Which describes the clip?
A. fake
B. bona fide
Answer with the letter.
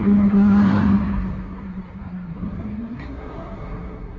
A